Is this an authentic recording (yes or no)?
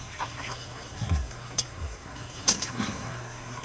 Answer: no